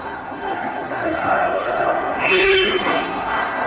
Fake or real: fake